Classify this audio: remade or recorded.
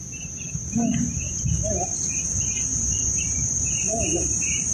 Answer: recorded